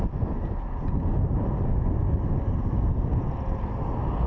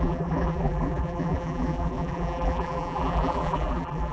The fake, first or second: second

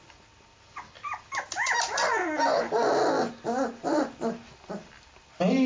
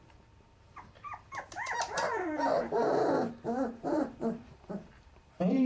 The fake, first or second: second